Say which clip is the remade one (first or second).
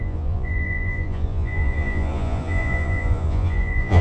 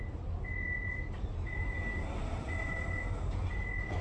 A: first